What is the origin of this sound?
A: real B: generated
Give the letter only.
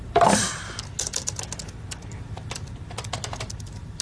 A